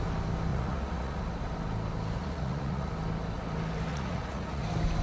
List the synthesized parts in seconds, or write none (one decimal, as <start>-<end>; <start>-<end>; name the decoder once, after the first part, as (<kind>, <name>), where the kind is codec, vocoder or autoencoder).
0.5-1.2 (vocoder, Vocos); 2.2-2.9; 3.9-4.6